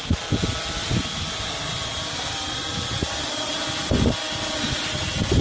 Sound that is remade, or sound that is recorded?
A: recorded